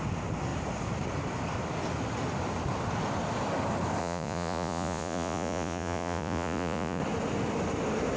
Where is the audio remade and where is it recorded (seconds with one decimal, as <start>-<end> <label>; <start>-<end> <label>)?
0.0-4.0 recorded; 4.0-7.0 remade; 7.0-8.2 recorded

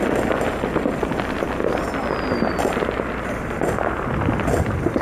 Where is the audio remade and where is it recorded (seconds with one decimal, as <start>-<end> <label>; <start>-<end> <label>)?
0.0-5.0 recorded

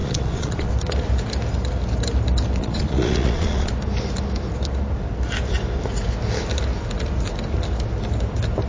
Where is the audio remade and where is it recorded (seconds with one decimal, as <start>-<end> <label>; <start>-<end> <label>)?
0.0-0.7 remade; 0.7-2.6 recorded; 2.6-3.7 remade; 3.7-8.7 recorded